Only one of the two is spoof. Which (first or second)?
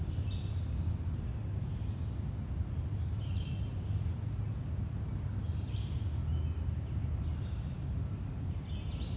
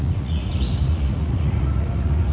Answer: second